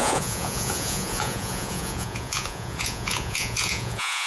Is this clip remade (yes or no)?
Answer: yes